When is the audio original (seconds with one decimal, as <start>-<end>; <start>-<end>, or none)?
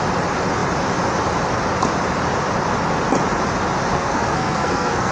0.0-3.9